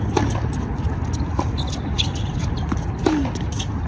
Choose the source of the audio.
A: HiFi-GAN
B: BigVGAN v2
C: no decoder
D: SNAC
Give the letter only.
C